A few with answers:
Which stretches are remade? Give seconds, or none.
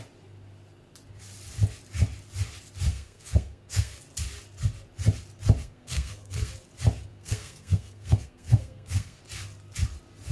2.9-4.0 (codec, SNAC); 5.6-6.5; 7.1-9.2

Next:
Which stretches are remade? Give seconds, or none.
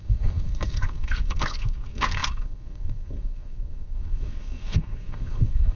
0.0-5.8 (codec, SNAC)